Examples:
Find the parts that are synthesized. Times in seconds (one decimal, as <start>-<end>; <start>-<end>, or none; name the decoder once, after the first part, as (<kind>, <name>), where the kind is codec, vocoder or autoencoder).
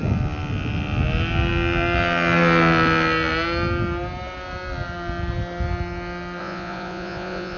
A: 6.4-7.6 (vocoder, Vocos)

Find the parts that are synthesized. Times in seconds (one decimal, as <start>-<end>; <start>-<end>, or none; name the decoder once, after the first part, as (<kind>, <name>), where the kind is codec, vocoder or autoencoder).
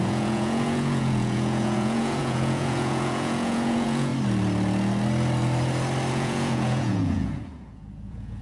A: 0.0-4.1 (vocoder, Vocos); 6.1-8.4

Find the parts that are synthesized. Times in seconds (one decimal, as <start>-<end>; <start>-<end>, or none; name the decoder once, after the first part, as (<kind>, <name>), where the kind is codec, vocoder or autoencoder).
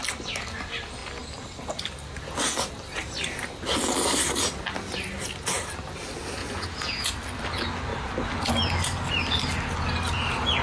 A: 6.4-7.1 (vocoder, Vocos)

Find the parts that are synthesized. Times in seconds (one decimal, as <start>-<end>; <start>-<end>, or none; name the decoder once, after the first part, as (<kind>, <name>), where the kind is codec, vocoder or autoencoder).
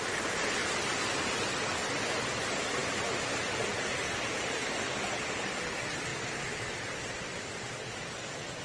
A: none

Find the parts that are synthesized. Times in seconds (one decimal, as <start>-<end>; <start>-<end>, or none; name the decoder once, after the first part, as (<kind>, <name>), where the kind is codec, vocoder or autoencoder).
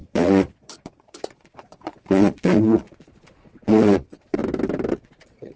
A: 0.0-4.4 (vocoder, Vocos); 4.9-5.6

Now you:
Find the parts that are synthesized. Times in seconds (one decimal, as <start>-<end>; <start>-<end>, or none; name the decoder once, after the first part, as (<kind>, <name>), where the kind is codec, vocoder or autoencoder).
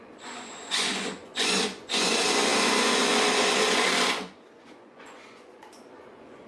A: 0.0-6.5 (vocoder, Vocos)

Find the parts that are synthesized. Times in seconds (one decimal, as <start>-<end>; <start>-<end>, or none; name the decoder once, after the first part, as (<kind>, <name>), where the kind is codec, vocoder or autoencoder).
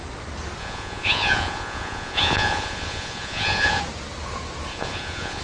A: 0.6-3.8 (vocoder, Vocos); 4.7-5.4